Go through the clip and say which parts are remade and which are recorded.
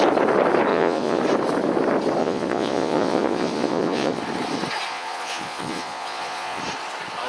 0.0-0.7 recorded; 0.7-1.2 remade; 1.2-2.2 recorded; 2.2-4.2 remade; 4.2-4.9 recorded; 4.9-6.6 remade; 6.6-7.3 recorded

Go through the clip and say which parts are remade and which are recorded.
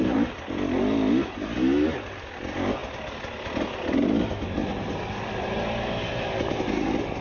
0.0-7.2 recorded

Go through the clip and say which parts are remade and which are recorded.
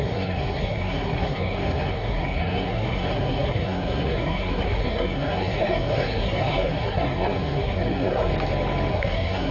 0.0-8.3 remade; 8.3-8.9 recorded; 8.9-9.5 remade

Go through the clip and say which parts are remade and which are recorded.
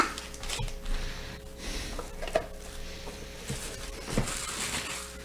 0.0-5.2 recorded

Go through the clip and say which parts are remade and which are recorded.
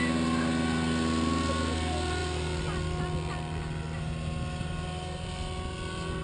0.0-6.2 recorded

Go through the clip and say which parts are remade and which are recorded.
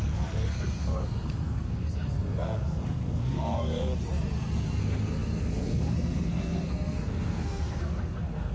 0.0-3.9 remade; 3.9-4.8 recorded; 4.8-8.5 remade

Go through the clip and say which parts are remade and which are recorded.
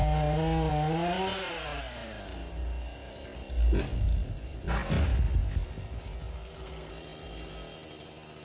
0.0-6.3 recorded; 6.3-6.9 remade; 6.9-8.4 recorded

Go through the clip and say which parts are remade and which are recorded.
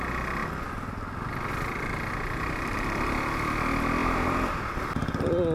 0.0-4.0 recorded; 4.0-4.7 remade; 4.7-5.5 recorded